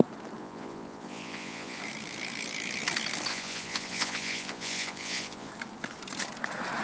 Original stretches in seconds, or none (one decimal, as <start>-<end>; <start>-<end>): 0.0-0.4; 1.8-3.3; 5.5-6.8